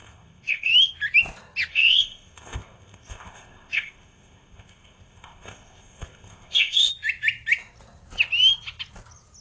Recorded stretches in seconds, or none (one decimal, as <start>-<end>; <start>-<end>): 0.7-1.7; 6.9-9.4